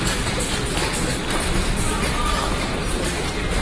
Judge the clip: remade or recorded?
remade